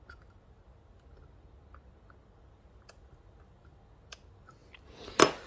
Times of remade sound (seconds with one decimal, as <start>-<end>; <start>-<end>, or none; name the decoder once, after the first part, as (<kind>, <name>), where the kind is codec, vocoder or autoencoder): none